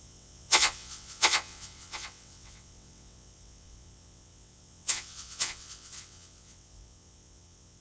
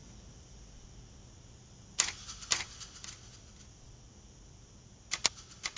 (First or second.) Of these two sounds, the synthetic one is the first